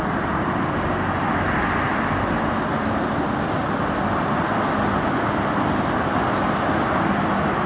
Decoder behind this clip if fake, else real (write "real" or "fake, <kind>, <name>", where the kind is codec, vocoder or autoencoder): real